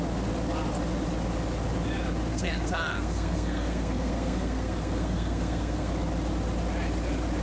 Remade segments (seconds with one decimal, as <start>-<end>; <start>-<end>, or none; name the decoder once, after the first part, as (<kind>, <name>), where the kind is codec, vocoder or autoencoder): 2.3-5.9 (codec, SNAC)